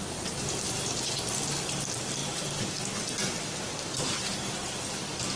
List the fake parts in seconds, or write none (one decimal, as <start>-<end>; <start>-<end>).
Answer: none